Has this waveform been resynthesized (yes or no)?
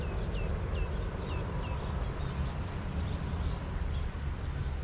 no